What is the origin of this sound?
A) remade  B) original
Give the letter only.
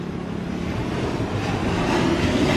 B